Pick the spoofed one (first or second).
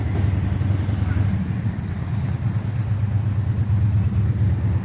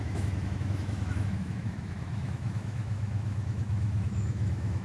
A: second